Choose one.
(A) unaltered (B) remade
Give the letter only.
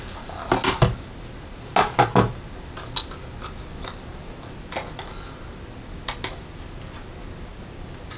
A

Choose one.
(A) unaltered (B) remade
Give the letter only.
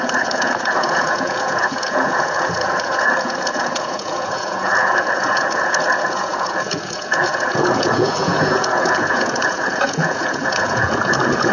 B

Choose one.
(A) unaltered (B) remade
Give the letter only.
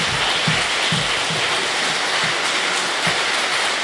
A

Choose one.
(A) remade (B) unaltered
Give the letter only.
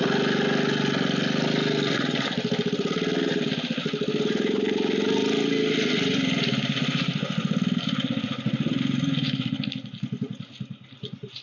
B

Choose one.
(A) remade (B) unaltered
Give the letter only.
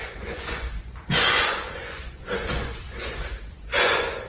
A